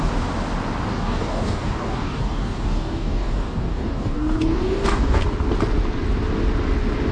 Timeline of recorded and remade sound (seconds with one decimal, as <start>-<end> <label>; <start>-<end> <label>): 0.0-0.9 recorded; 0.9-5.2 remade; 5.2-7.1 recorded